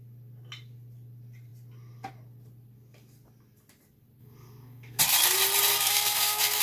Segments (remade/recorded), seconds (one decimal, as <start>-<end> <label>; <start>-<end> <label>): 0.0-4.2 recorded; 4.2-5.0 remade; 5.0-5.7 recorded; 5.7-6.6 remade